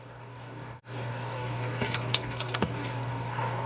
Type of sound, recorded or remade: remade